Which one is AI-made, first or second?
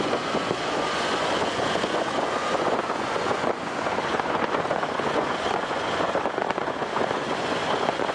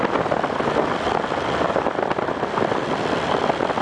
first